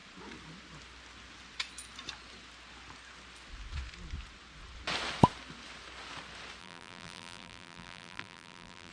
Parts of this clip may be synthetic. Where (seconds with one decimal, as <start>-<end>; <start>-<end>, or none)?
6.6-8.9